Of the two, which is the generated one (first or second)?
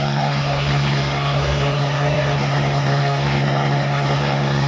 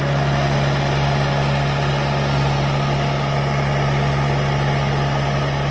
first